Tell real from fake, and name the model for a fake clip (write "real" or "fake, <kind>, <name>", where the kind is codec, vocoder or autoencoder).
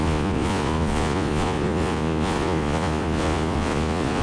fake, vocoder, Vocos